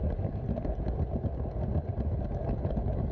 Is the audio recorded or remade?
recorded